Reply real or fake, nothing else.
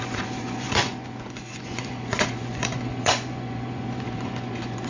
fake